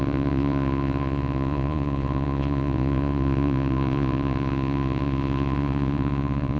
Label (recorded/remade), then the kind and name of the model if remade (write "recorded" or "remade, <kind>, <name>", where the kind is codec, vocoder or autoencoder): remade, vocoder, Vocos